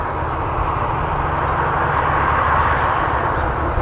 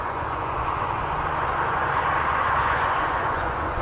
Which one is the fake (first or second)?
second